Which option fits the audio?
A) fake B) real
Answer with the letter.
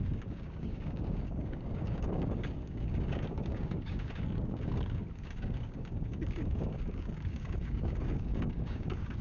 A